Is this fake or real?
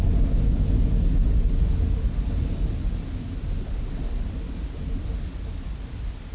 real